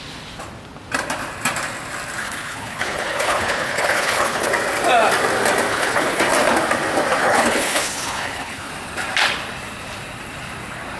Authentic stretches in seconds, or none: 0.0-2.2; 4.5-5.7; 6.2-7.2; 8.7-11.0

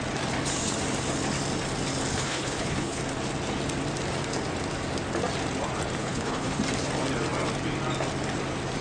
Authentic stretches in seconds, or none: 0.0-2.1; 3.0-6.0; 6.6-8.8

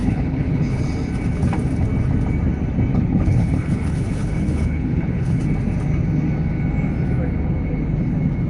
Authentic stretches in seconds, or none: 0.8-2.9; 5.4-8.5

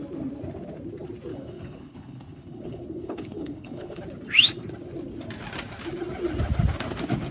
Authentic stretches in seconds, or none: 0.0-1.3; 4.0-7.3